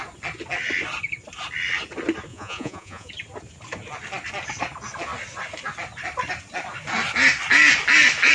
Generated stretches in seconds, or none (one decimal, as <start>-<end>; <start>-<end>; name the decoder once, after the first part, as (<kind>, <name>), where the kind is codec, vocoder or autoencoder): 2.3-3.1 (vocoder, Vocos)